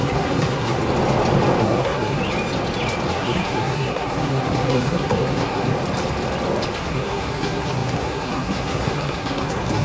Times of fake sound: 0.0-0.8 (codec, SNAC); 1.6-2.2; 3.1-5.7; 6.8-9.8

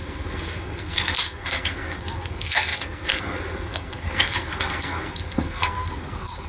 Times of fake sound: 0.0-6.5 (codec, SNAC)

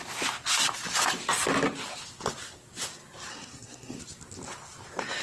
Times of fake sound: 3.3-4.0 (codec, SNAC)

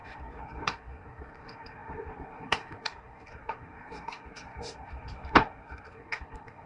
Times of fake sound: 0.0-6.7 (codec, SNAC)

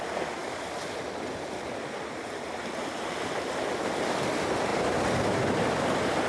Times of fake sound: none

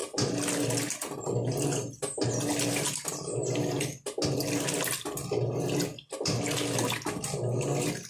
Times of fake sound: none

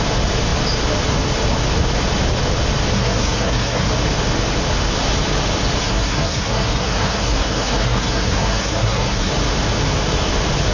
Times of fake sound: 2.9-3.9 (codec, SNAC); 5.8-9.3

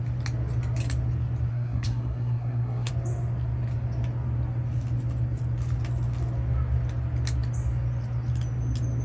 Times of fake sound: 1.5-2.9 (codec, SNAC)